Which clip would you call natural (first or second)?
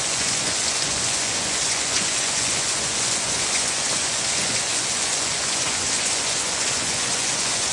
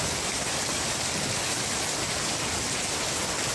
second